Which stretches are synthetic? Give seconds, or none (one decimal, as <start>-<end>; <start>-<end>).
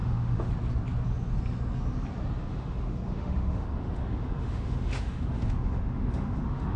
0.0-0.5; 2.4-6.8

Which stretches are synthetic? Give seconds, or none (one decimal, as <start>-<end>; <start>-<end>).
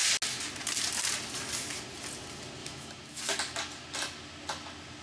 2.6-3.2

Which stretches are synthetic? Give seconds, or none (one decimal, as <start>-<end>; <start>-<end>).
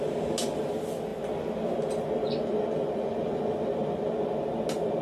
none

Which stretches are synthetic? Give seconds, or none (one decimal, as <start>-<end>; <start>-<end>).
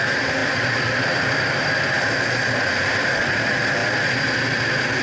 none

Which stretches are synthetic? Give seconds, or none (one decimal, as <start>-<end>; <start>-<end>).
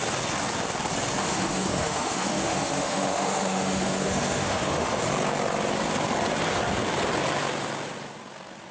1.2-5.0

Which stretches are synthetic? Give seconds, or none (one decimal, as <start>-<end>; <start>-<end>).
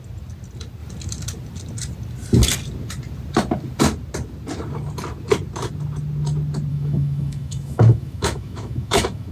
6.7-9.3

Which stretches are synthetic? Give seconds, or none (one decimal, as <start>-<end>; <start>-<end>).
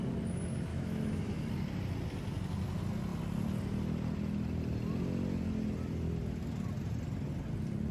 0.7-1.5